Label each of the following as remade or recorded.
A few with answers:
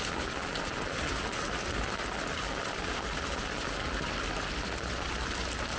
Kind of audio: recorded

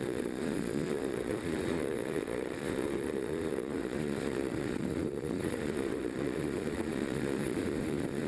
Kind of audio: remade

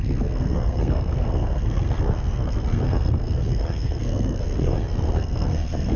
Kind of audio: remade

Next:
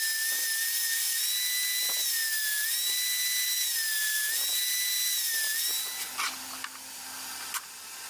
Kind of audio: recorded